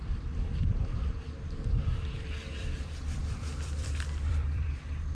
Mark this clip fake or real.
fake